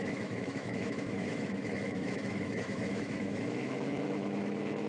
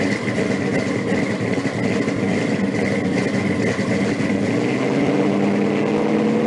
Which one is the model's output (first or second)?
first